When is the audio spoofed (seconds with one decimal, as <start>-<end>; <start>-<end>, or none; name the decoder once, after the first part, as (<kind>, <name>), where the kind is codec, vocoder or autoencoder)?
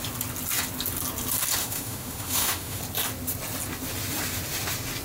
1.6-2.8 (autoencoder, DAC-VAE)